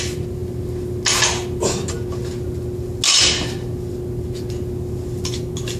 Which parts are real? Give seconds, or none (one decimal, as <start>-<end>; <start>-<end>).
0.0-5.8